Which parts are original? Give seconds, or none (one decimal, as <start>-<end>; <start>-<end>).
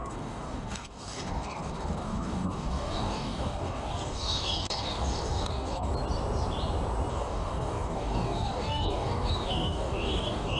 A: 5.9-7.1